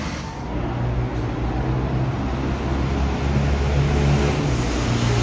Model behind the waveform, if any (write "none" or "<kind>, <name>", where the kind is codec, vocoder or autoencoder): none